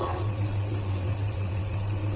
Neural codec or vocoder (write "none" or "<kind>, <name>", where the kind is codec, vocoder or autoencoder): vocoder, WaveNeXt